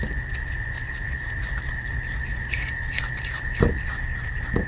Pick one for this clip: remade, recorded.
recorded